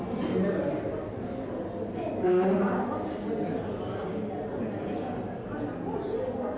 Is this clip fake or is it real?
real